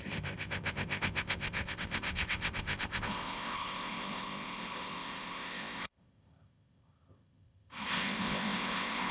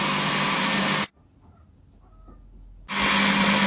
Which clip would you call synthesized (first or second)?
first